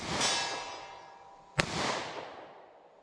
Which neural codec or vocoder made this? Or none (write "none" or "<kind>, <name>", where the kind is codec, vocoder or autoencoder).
none